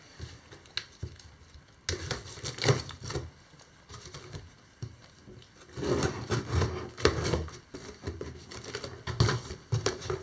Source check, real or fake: real